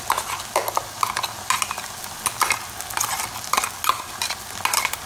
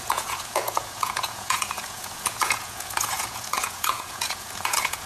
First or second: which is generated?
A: second